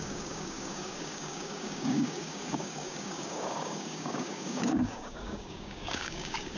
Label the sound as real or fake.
fake